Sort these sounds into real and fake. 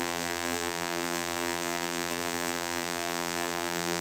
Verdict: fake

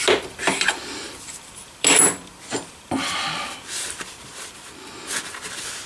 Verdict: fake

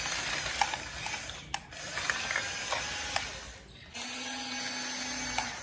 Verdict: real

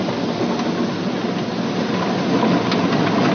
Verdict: real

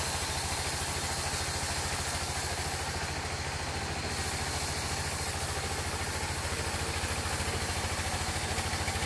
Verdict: real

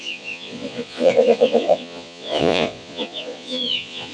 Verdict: fake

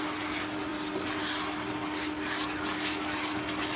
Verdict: real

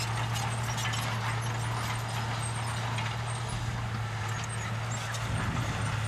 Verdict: real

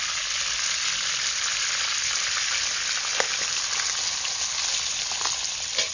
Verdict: real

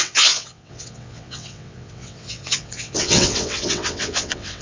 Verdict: fake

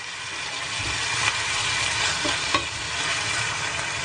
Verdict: real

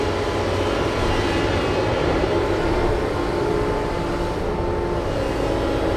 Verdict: real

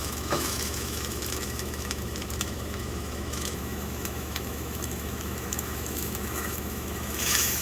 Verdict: fake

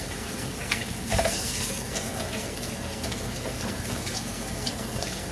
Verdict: fake